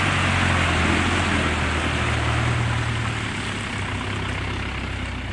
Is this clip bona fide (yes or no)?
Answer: yes